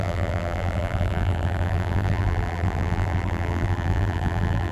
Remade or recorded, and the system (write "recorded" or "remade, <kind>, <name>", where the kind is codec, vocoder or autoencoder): remade, vocoder, BigVGAN v2